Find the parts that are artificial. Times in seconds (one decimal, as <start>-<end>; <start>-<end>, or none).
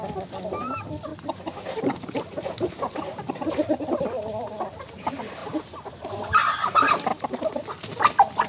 1.1-3.5; 5.4-5.9; 7.1-7.6